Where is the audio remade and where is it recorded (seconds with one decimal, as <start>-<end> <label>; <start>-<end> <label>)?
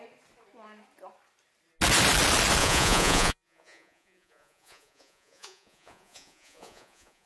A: 0.0-2.6 recorded; 2.6-7.3 remade